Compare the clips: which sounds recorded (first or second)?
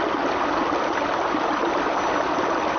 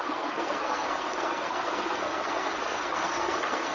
first